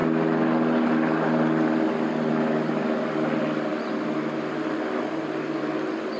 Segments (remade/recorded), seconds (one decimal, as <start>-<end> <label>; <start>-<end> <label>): 0.0-6.2 recorded